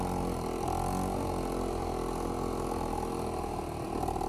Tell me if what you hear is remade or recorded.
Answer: recorded